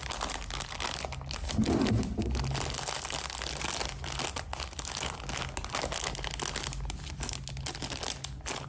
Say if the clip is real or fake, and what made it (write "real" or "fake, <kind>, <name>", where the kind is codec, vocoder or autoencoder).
real